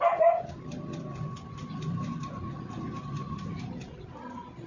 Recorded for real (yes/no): yes